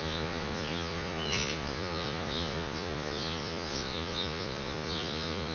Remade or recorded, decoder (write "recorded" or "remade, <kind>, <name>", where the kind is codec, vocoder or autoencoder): remade, vocoder, Vocos